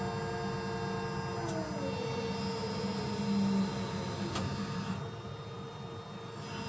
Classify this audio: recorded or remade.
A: recorded